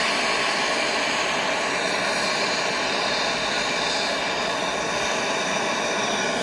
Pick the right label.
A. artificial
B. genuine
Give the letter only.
B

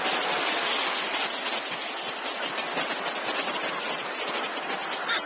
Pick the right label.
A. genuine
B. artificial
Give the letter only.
A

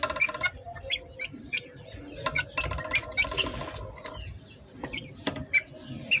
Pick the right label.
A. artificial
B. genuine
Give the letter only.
B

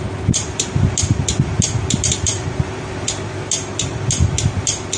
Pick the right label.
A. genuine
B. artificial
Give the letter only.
A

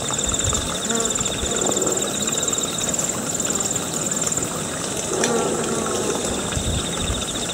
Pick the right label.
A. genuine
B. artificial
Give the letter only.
A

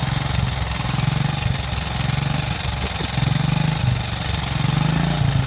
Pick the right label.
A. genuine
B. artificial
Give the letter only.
A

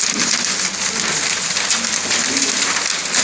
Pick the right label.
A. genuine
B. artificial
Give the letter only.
A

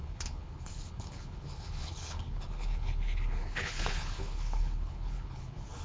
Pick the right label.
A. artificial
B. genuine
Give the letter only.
A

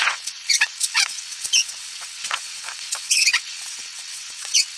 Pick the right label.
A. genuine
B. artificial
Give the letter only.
B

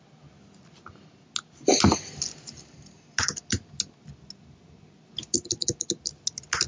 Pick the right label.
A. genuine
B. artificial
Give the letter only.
A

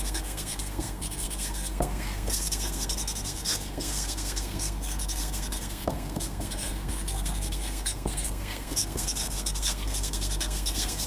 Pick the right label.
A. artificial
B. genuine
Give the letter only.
A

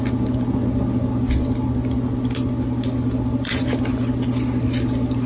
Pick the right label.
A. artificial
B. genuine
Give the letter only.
B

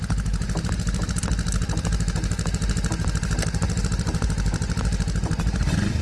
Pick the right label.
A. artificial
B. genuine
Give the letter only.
B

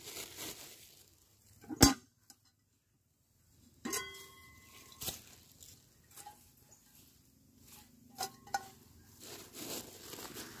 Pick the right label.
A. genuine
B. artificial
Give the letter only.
A